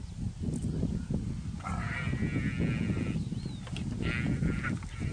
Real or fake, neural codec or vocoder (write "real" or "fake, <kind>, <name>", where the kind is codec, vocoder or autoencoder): real